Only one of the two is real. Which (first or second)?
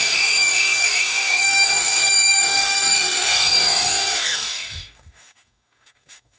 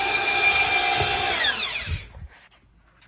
second